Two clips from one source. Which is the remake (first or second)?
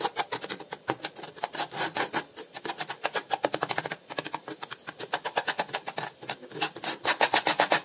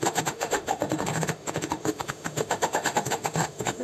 second